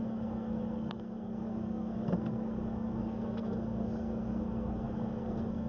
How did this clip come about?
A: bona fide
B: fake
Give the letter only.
B